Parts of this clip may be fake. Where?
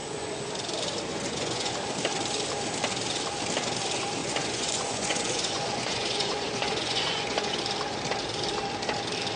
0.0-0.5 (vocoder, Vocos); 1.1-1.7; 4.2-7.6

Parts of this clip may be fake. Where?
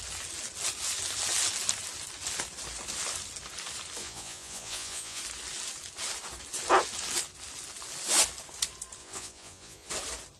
4.0-5.2 (vocoder, Vocos); 9.0-9.9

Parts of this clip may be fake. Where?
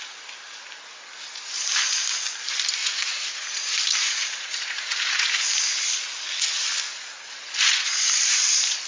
2.8-5.4 (vocoder, Vocos); 6.9-8.9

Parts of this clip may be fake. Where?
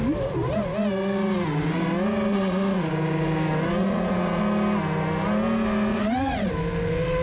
2.3-2.9 (vocoder, Vocos); 3.8-4.4; 5.9-6.5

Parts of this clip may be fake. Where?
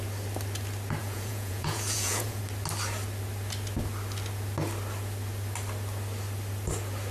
1.0-2.4 (vocoder, Vocos)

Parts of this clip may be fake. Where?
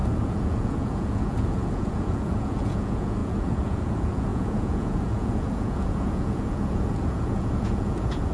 0.0-8.3 (vocoder, Vocos)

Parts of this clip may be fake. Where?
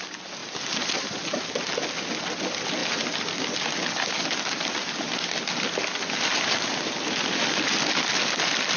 none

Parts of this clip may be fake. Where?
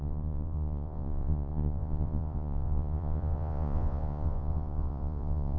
0.0-5.6 (vocoder, Vocos)